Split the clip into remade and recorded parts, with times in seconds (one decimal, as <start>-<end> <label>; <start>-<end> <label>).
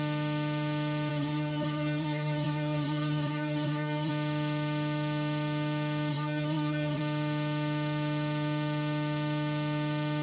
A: 0.0-1.1 recorded; 1.1-4.1 remade; 4.1-6.1 recorded; 6.1-7.0 remade; 7.0-10.2 recorded